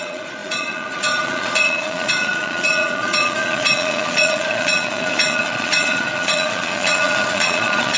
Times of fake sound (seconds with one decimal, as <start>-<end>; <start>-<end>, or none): 0.0-8.0